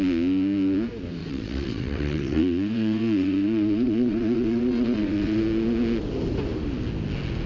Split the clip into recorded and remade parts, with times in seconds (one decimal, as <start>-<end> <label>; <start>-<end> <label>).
0.0-1.2 recorded; 1.2-5.4 remade; 5.4-7.5 recorded